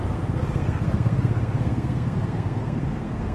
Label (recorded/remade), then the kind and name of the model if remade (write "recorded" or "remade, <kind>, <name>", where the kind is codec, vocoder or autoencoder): remade, codec, SNAC